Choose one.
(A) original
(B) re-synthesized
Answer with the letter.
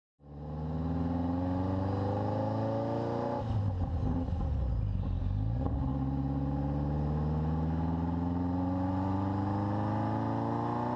A